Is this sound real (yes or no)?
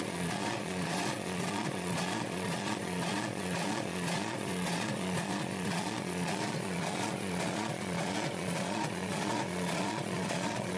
no